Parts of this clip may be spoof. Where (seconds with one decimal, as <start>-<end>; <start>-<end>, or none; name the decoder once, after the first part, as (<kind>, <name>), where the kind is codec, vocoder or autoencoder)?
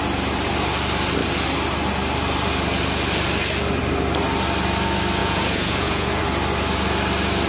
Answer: 5.2-6.2 (vocoder, Vocos)